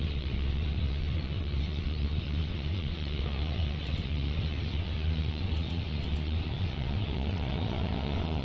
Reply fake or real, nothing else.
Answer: fake